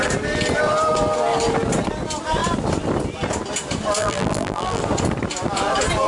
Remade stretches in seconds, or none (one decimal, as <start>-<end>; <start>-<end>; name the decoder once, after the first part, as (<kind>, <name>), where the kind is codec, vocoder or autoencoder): 4.0-4.8 (vocoder, BigVGAN v2)

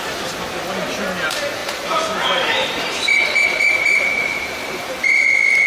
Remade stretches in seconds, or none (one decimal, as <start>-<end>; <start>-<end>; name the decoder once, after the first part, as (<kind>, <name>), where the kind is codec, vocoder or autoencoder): 1.6-5.0 (vocoder, BigVGAN v2)

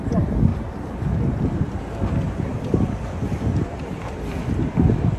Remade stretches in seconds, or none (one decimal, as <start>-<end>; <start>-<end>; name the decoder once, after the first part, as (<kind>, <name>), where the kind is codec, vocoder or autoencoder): 0.5-1.7 (vocoder, BigVGAN v2); 2.5-4.0

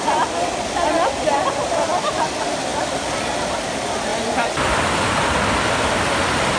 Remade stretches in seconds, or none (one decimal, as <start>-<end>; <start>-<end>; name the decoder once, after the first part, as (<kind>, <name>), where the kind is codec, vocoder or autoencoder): 4.1-5.9 (vocoder, BigVGAN v2)

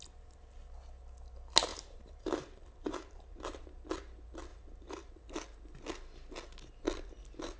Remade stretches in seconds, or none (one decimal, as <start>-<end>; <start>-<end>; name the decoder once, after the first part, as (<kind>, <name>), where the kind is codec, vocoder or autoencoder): 1.7-3.6 (vocoder, BigVGAN v2); 4.5-5.1